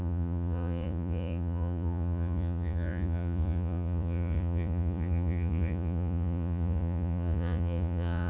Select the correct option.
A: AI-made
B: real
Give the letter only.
A